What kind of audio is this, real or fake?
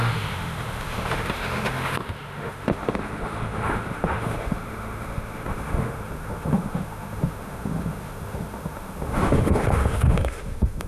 fake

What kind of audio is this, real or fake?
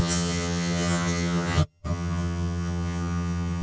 fake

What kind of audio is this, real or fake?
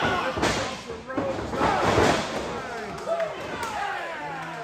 real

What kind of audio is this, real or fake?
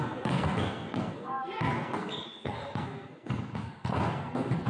fake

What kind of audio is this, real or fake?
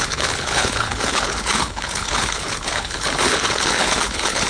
fake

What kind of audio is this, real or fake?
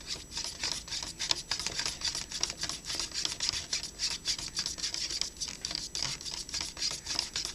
real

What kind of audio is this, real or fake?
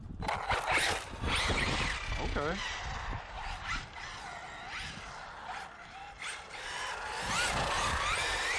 real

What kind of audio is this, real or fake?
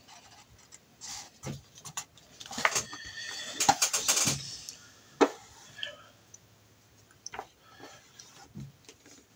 real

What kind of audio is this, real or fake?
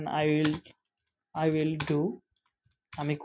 real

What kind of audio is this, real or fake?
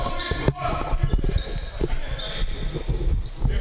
real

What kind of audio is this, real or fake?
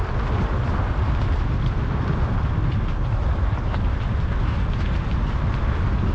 real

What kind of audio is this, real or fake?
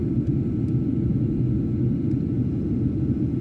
real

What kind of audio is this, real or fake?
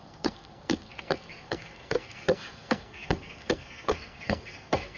fake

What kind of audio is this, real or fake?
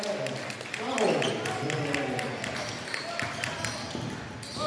real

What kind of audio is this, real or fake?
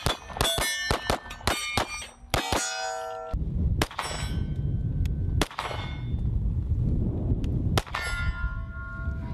real